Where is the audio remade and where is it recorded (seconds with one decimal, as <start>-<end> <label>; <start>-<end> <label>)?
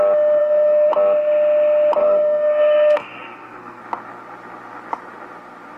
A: 0.0-0.4 recorded; 0.4-0.9 remade; 0.9-2.0 recorded; 2.0-3.8 remade; 3.8-5.8 recorded